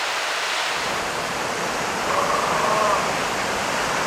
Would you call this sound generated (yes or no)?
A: no